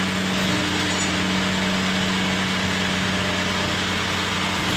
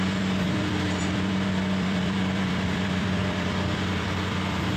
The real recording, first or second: first